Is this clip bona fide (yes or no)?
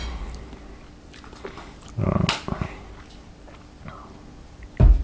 yes